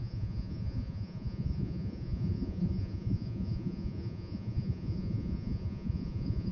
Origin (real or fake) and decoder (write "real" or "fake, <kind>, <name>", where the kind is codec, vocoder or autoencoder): fake, vocoder, Vocos